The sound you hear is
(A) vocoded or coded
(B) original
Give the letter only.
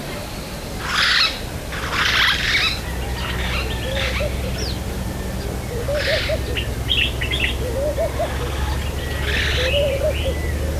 B